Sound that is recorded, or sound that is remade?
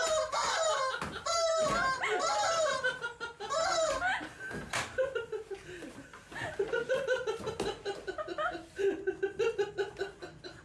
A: recorded